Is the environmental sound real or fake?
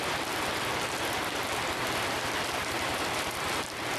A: real